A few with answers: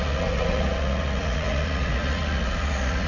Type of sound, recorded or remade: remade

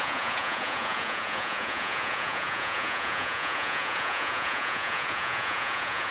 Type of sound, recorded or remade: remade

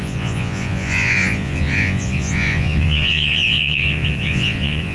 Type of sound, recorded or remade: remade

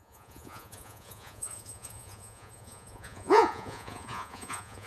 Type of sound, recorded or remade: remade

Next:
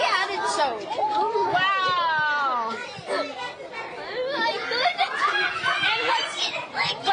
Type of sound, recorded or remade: recorded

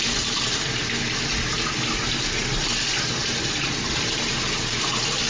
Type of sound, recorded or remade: recorded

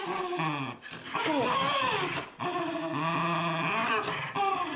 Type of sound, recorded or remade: recorded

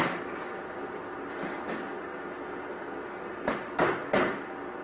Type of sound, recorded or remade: recorded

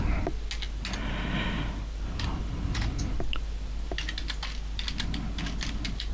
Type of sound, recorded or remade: recorded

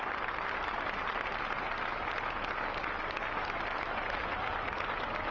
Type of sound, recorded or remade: recorded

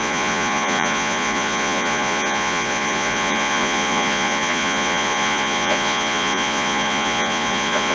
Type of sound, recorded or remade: remade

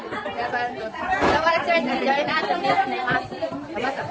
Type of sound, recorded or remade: recorded